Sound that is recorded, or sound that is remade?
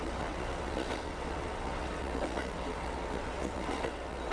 remade